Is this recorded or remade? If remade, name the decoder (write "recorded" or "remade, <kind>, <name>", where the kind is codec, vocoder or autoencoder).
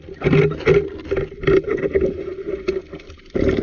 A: recorded